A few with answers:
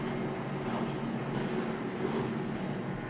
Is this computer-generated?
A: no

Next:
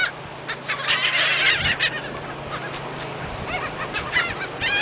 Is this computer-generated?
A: no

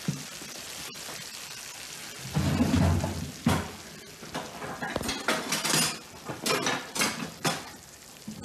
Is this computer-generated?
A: no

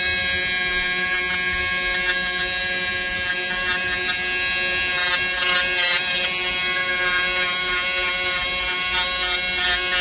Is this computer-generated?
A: no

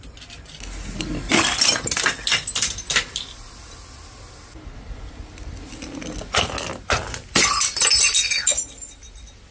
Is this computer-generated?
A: no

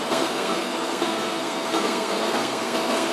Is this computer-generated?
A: yes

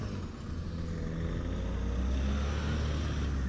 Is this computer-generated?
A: no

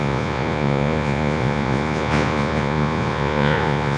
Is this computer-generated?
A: yes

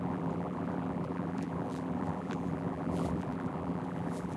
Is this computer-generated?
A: yes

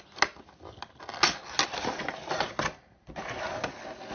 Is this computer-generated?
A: no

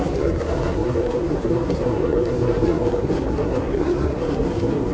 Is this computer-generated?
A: yes